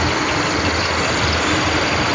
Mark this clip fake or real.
real